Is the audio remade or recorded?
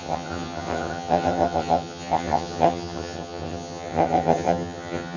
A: remade